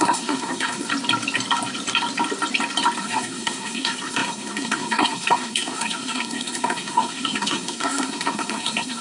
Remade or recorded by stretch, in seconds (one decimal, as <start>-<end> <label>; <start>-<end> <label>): 0.0-0.9 remade; 0.9-3.0 recorded; 3.0-9.0 remade